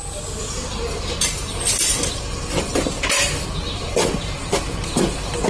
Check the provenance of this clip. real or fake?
real